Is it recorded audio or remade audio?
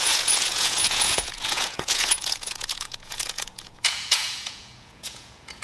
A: remade